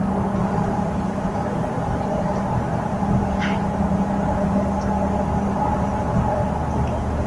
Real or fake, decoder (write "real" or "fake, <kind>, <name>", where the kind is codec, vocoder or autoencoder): real